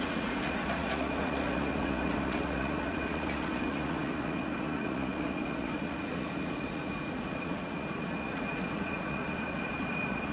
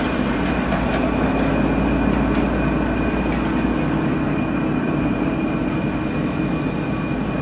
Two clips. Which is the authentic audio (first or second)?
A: second